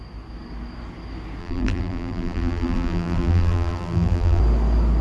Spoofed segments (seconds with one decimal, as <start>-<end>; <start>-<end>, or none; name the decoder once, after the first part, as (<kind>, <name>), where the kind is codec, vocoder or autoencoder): 1.4-4.4 (vocoder, BigVGAN v2)